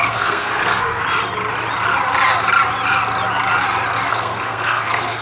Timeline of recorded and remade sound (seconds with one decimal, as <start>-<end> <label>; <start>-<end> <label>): 0.0-1.0 remade; 1.0-4.1 recorded; 4.1-5.2 remade

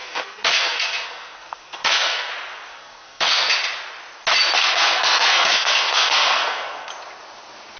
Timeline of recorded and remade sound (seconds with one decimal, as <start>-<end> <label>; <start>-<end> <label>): 0.0-2.3 remade; 2.3-2.7 recorded; 2.7-3.5 remade; 3.5-4.6 recorded; 4.6-6.9 remade; 6.9-7.8 recorded

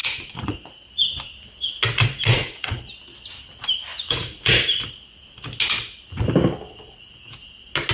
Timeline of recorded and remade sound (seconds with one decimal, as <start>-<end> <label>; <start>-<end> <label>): 0.0-0.9 remade; 0.9-2.3 recorded; 2.3-2.8 remade; 2.8-3.9 recorded; 3.9-4.5 remade; 4.5-7.9 recorded

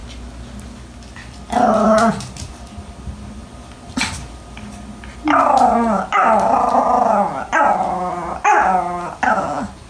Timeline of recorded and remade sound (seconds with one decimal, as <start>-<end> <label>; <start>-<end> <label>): 0.0-9.9 recorded

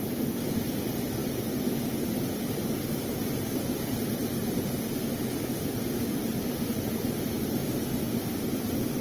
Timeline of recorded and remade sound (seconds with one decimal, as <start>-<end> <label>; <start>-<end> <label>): 0.0-9.0 recorded

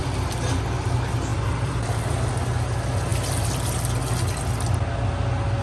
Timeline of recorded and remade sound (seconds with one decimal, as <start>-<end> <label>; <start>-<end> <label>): 0.0-0.6 remade; 0.6-1.3 recorded; 1.3-2.3 remade; 2.3-5.6 recorded